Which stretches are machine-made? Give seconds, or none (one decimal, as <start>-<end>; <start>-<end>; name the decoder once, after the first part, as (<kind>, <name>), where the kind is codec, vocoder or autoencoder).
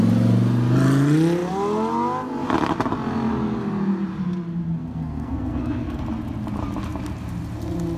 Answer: 4.8-6.0 (codec, SNAC)